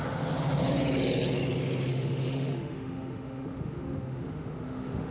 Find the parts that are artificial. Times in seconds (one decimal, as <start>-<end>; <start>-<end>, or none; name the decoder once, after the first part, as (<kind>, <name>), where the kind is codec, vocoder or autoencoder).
1.9-5.1 (autoencoder, DAC-VAE)